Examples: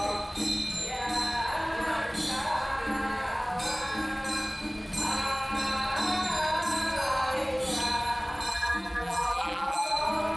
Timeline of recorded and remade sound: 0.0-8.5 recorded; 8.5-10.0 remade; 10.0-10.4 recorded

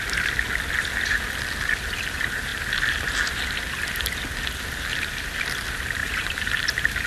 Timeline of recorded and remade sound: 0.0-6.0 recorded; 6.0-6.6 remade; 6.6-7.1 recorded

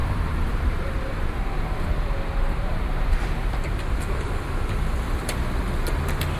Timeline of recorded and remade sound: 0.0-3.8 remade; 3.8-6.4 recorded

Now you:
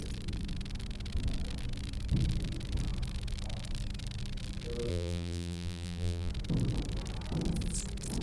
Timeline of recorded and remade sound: 0.0-4.9 recorded; 4.9-6.3 remade; 6.3-8.2 recorded

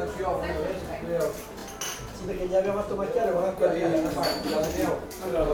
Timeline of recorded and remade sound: 0.0-3.9 recorded; 3.9-4.9 remade; 4.9-5.5 recorded